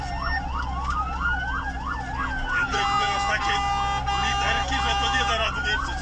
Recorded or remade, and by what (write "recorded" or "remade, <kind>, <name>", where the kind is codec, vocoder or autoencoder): recorded